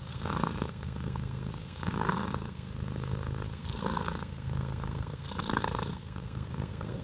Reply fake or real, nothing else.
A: fake